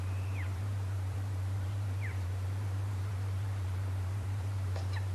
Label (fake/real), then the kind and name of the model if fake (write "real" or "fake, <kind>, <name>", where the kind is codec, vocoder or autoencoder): fake, vocoder, BigVGAN v2